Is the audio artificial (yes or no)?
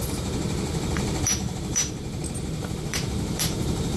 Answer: yes